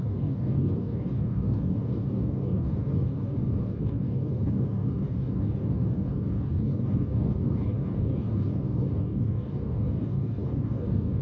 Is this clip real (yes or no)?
no